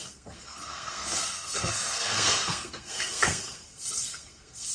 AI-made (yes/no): yes